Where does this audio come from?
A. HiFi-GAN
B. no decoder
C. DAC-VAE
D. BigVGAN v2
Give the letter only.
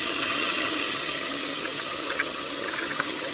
A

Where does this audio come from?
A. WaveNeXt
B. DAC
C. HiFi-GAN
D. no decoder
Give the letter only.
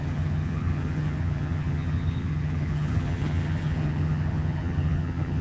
C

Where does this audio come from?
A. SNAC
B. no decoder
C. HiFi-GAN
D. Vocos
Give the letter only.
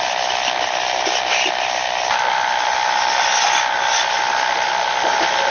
B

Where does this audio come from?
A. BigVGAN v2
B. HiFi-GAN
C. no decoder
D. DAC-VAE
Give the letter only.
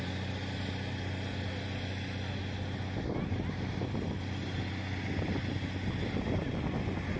C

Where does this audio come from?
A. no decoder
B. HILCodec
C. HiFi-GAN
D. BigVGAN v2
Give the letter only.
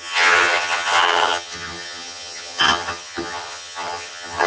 C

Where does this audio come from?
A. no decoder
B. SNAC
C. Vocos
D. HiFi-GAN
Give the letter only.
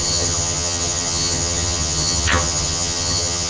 D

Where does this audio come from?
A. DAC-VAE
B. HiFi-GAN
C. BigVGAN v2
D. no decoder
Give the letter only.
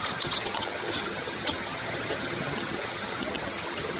B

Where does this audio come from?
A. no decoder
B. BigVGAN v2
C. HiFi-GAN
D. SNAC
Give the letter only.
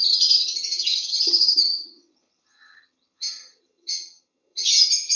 C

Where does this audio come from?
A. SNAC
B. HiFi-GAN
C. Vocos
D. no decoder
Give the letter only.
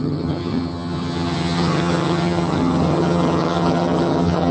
B